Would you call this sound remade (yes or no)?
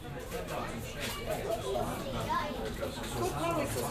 yes